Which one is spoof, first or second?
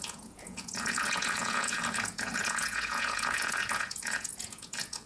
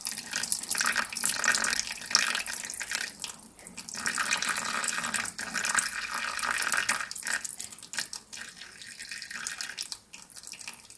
first